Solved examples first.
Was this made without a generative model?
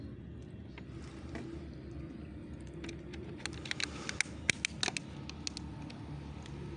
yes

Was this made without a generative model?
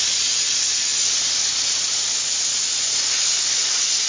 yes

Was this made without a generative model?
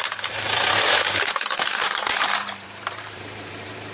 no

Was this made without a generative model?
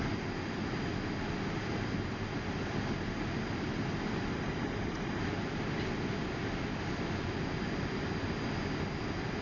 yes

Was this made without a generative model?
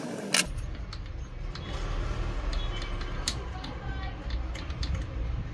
yes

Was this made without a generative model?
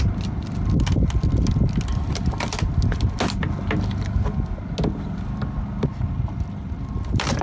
yes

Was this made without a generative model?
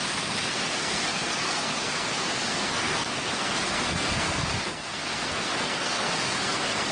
no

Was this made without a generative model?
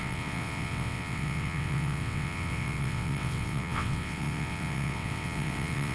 no